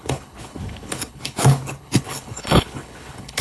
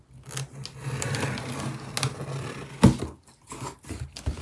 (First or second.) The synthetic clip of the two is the first